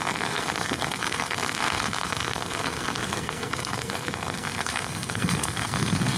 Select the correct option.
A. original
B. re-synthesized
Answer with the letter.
B